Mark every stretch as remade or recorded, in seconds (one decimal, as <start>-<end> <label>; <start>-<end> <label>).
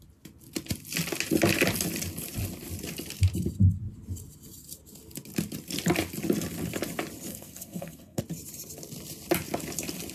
0.0-7.3 recorded; 7.3-8.2 remade; 8.2-10.1 recorded